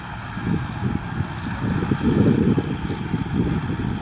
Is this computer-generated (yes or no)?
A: no